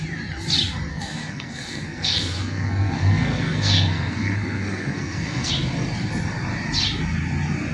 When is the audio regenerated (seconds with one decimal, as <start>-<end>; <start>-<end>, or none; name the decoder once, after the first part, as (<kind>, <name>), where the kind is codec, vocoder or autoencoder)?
0.9-5.5 (codec, SNAC)